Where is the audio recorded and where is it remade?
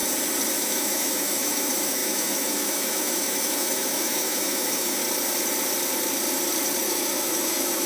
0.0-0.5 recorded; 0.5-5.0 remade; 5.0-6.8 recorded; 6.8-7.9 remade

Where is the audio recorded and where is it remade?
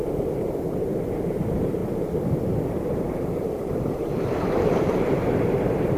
0.0-1.8 remade; 1.8-2.8 recorded; 2.8-6.0 remade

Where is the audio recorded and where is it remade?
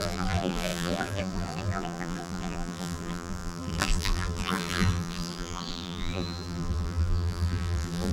0.0-8.1 remade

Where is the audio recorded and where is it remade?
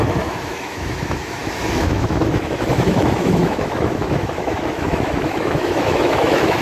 0.0-6.6 remade